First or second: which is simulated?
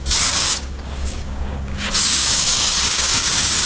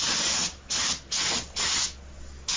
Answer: first